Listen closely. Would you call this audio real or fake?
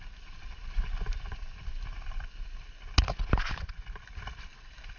real